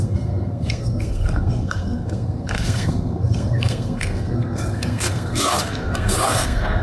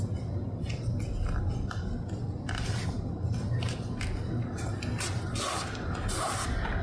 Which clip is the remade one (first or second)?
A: first